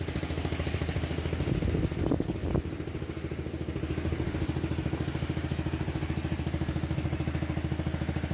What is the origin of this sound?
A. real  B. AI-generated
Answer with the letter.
A